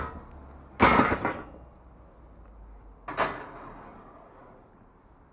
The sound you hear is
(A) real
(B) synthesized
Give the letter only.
A